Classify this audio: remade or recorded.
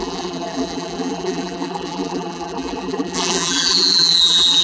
remade